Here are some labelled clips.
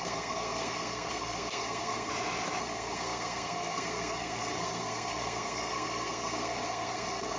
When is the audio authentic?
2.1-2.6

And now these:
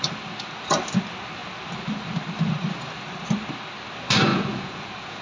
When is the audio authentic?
0.0-4.3

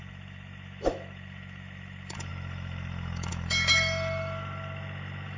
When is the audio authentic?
none

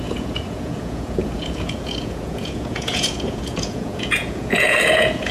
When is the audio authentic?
none

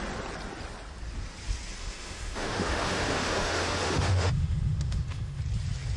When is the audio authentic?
0.0-1.8; 5.4-6.0